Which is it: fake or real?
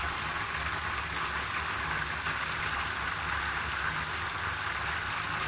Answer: real